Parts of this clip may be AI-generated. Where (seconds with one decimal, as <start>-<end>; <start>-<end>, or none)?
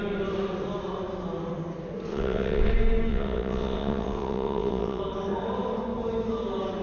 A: 2.1-2.7; 3.1-5.0